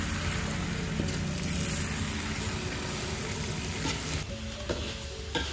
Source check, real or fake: real